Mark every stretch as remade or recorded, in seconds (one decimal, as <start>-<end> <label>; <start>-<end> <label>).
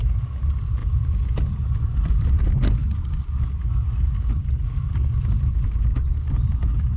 0.0-0.8 recorded; 0.8-2.4 remade; 2.4-7.0 recorded